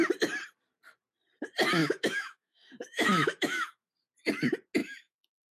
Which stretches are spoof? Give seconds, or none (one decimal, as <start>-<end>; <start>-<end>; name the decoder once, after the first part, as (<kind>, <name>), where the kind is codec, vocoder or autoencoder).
1.8-3.9 (autoencoder, DAC-VAE); 4.8-5.5